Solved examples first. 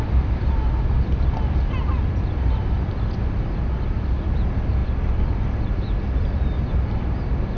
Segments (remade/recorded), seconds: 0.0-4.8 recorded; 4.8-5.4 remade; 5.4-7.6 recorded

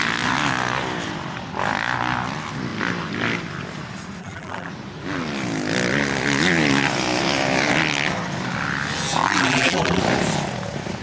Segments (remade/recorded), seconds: 0.0-4.2 recorded; 4.2-4.7 remade; 4.7-9.2 recorded; 9.2-10.0 remade; 10.0-11.0 recorded

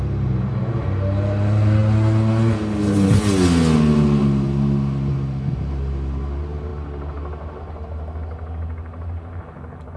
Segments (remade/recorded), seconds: 0.0-10.0 recorded

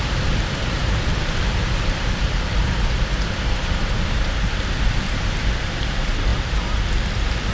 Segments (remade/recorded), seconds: 0.0-0.8 recorded; 0.8-5.3 remade; 5.3-6.3 recorded; 6.3-6.9 remade; 6.9-7.5 recorded

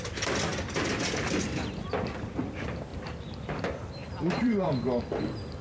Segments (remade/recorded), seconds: 0.0-4.0 recorded; 4.0-4.7 remade; 4.7-5.6 recorded